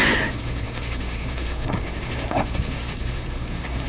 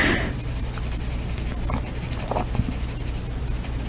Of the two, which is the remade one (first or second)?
first